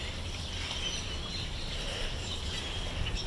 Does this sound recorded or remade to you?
recorded